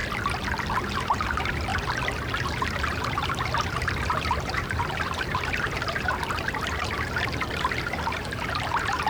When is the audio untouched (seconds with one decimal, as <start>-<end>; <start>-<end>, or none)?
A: 0.0-0.8; 1.7-2.4